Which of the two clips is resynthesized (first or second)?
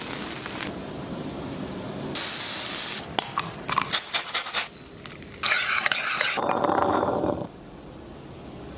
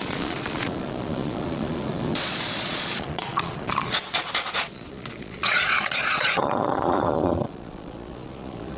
second